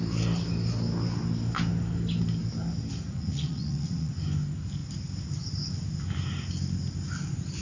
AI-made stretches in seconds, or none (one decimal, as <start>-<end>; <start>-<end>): 3.1-4.1